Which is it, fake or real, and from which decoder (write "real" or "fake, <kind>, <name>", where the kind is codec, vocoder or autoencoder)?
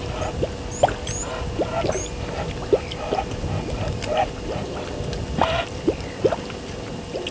real